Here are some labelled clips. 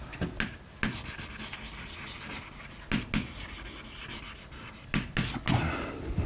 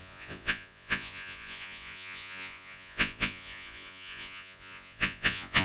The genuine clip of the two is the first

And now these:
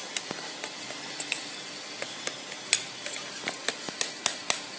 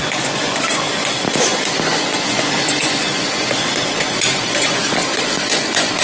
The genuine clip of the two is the first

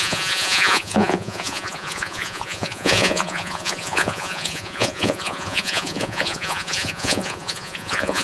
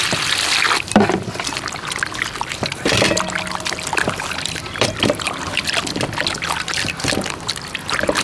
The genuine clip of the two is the second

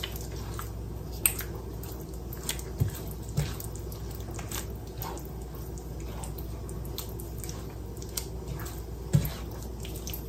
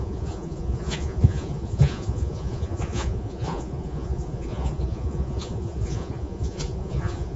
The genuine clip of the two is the first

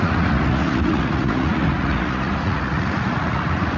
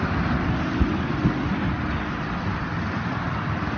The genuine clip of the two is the second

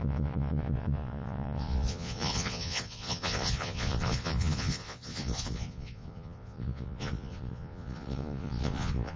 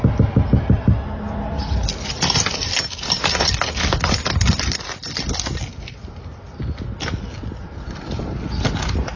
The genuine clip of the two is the second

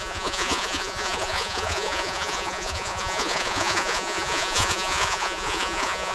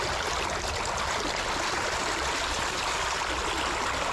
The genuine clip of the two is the second